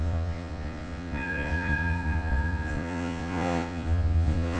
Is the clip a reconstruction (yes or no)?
yes